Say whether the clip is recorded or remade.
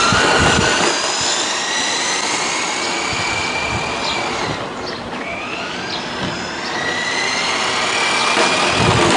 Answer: recorded